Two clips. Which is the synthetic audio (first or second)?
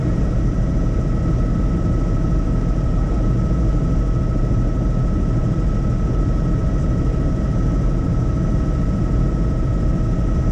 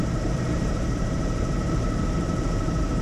second